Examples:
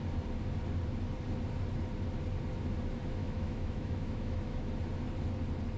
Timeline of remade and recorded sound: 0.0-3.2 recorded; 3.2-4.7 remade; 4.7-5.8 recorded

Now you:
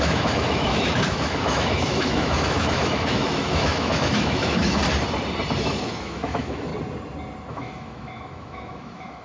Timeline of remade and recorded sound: 0.0-4.8 remade; 4.8-5.6 recorded; 5.6-6.7 remade; 6.7-7.5 recorded; 7.5-9.2 remade

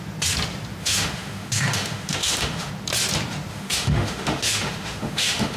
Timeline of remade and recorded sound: 0.0-0.8 recorded; 0.8-2.7 remade; 2.7-3.5 recorded; 3.5-5.6 remade

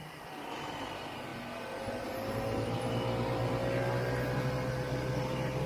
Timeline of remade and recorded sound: 0.0-5.7 recorded